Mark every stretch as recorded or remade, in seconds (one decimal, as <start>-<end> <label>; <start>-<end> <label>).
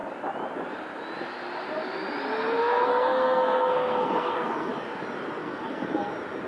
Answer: 0.0-2.6 recorded; 2.6-4.7 remade; 4.7-5.4 recorded; 5.4-6.1 remade; 6.1-6.5 recorded